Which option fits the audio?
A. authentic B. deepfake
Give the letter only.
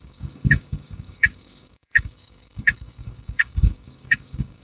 B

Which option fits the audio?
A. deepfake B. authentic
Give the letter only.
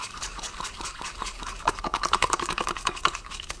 A